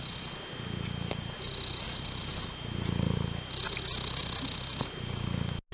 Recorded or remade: recorded